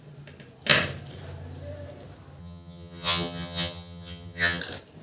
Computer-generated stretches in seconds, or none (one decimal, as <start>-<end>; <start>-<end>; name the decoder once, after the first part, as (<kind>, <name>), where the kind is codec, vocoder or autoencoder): 2.4-4.6 (vocoder, HiFi-GAN)